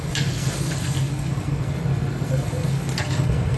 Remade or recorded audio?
remade